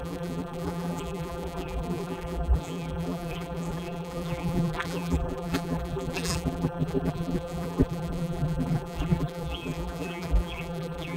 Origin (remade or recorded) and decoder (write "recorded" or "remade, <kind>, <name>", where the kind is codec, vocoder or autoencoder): remade, vocoder, BigVGAN v2